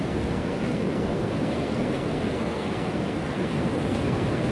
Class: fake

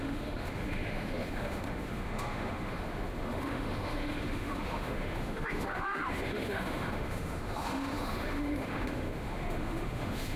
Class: fake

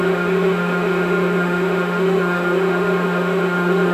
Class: fake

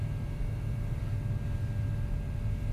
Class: real